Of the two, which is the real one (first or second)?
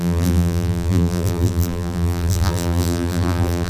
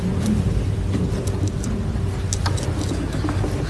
second